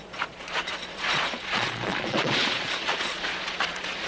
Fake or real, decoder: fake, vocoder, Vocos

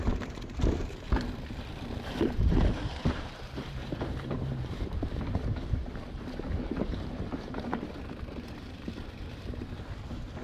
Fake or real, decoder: fake, vocoder, BigVGAN v2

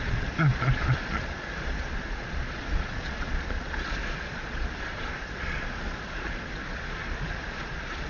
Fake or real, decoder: fake, vocoder, Vocos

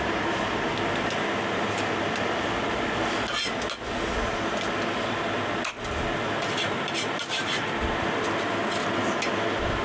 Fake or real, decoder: real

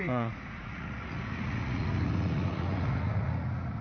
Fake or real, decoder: fake, vocoder, Vocos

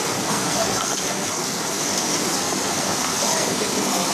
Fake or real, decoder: fake, codec, SNAC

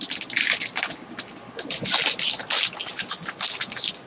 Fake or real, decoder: real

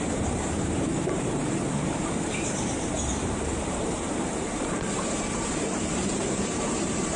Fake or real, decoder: fake, vocoder, BigVGAN v2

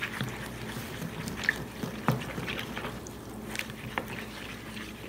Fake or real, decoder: real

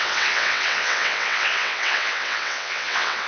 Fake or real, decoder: fake, vocoder, WaveNeXt